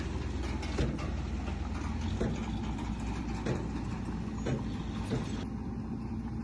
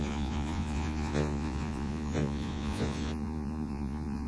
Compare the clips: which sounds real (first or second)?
first